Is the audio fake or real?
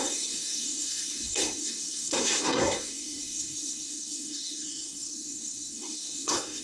fake